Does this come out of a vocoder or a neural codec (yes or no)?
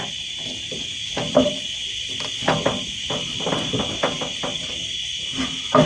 no